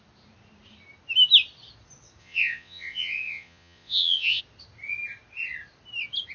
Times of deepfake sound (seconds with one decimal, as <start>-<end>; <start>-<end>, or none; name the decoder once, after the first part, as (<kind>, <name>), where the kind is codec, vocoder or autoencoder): 2.2-4.4 (vocoder, Vocos)